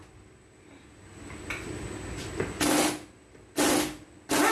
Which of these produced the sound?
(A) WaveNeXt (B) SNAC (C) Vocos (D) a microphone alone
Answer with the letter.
D